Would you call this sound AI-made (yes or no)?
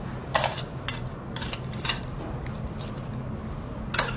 no